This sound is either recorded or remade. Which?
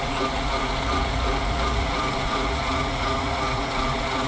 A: remade